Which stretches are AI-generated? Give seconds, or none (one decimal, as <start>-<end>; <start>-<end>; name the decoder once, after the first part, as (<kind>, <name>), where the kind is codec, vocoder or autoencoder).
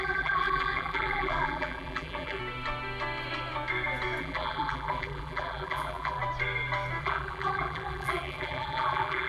0.0-2.4 (vocoder, BigVGAN v2); 4.2-6.2; 7.0-9.3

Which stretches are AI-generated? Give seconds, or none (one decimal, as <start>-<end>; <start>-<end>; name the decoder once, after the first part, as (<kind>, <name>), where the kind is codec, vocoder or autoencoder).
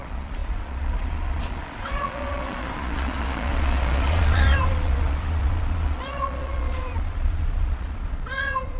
0.0-8.8 (vocoder, Vocos)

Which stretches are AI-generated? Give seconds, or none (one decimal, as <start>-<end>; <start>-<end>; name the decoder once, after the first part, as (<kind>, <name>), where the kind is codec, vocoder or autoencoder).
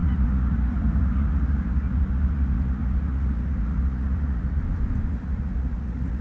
0.0-4.6 (vocoder, Vocos); 5.1-6.2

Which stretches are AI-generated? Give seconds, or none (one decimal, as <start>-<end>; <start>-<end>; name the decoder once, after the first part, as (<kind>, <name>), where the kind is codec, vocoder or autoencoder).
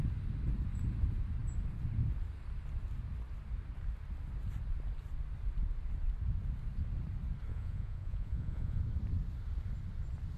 7.5-8.8 (vocoder, Vocos)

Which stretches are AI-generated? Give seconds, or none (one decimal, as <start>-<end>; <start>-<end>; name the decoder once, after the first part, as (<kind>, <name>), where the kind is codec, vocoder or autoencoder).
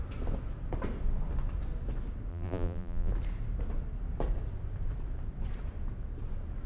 2.3-3.1 (vocoder, BigVGAN v2)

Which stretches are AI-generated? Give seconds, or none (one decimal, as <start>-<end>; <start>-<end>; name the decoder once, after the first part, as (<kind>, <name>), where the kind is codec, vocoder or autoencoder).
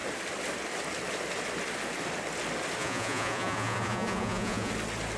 2.8-4.7 (vocoder, Vocos)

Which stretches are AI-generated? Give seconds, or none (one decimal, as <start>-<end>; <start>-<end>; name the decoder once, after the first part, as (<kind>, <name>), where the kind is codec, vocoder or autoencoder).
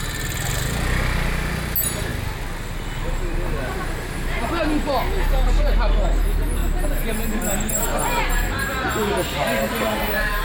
none